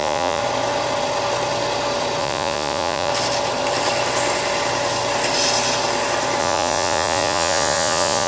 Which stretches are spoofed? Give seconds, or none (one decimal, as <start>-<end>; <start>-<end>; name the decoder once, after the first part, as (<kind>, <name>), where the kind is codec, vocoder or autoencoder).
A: 0.0-0.4 (vocoder, Vocos); 2.2-3.1; 6.4-8.3